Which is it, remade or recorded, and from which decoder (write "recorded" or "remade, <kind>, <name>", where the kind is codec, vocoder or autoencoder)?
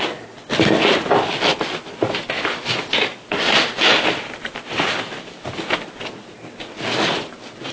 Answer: recorded